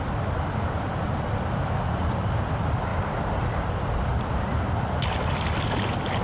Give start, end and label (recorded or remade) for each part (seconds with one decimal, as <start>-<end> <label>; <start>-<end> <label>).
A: 0.0-2.9 remade; 2.9-3.7 recorded; 3.7-6.2 remade